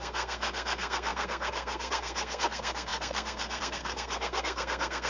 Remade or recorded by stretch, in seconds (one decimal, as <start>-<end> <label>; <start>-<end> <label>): 0.0-5.1 remade